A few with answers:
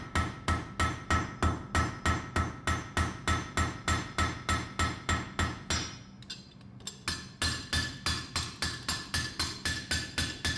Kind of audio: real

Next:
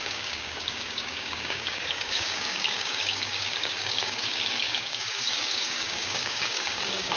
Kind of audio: fake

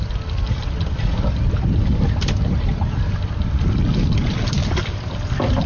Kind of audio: real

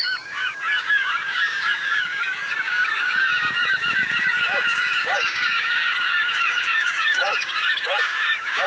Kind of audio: fake